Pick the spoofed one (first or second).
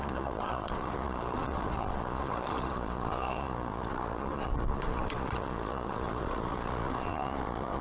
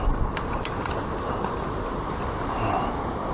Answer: first